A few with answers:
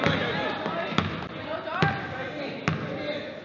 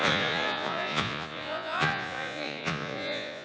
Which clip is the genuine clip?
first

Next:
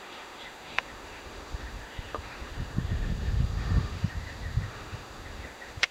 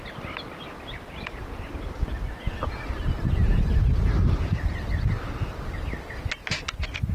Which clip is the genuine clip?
second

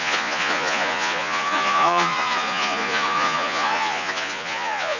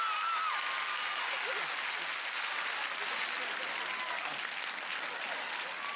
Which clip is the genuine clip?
second